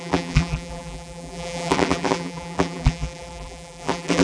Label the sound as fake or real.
fake